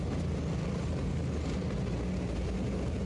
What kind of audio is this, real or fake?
real